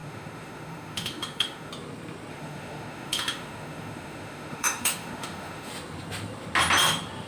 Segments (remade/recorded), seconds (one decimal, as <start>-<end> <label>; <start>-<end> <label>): 0.0-1.7 remade; 1.7-2.3 recorded; 2.3-5.7 remade; 5.7-7.3 recorded